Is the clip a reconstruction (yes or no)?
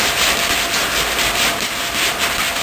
no